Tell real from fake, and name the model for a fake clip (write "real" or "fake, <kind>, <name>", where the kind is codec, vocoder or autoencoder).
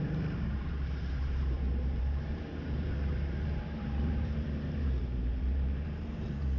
fake, vocoder, BigVGAN v2